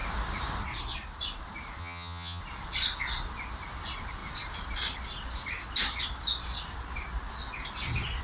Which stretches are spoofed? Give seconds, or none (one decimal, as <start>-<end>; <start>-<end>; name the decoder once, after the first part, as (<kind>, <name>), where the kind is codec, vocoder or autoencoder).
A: 1.8-2.4 (vocoder, HiFi-GAN)